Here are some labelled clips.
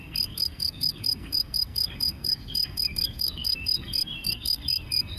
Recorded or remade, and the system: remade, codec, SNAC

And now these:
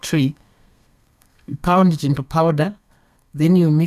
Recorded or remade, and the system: remade, codec, SNAC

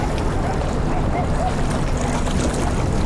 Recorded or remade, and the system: recorded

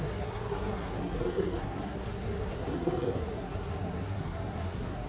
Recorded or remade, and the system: remade, codec, SNAC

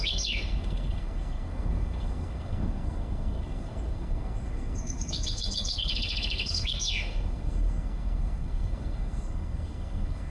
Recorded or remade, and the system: remade, codec, SNAC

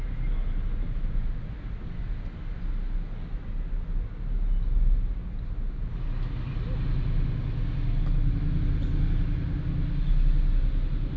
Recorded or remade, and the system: recorded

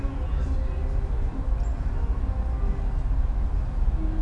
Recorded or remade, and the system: recorded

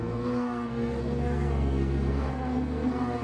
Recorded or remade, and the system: remade, codec, SNAC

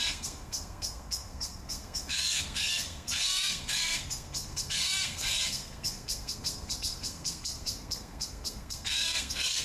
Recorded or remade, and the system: remade, codec, SNAC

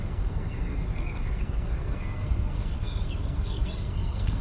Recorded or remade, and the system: remade, codec, SNAC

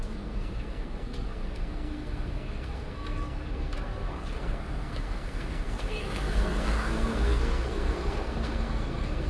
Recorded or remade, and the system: remade, codec, SNAC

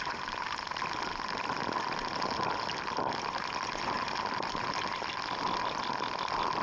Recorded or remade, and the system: recorded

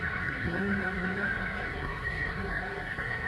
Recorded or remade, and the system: remade, codec, SNAC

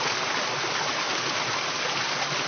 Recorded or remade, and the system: recorded